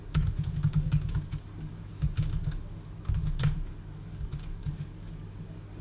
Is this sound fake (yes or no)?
yes